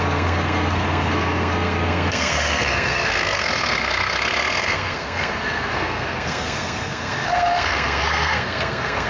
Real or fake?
fake